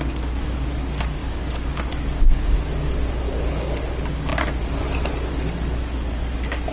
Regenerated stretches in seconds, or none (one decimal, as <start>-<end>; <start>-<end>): 0.0-6.7